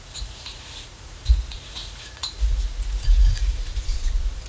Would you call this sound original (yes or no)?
no